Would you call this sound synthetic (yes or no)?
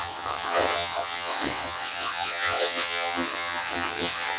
yes